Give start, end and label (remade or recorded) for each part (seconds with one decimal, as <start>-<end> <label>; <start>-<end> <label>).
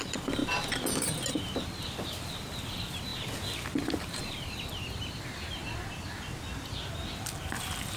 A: 0.0-0.4 remade; 0.4-1.3 recorded; 1.3-5.6 remade; 5.6-6.9 recorded; 6.9-8.0 remade